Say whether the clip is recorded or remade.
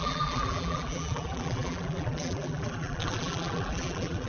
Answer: remade